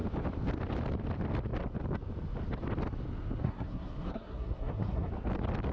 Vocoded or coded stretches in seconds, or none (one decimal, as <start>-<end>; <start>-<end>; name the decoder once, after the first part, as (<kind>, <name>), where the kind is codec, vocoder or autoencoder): 3.4-5.1 (codec, SNAC)